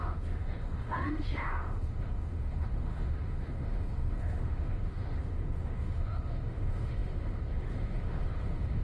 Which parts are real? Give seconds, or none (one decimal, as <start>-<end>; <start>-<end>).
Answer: none